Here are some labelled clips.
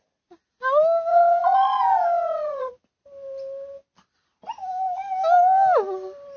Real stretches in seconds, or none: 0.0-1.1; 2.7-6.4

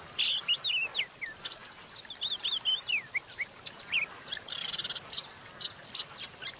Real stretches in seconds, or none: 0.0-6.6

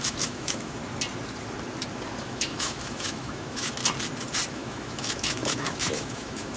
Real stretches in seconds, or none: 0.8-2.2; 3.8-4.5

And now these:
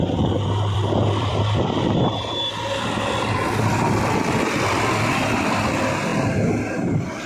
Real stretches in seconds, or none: 1.3-4.7; 6.1-6.7